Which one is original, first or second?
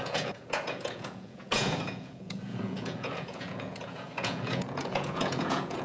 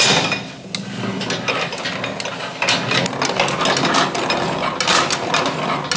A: second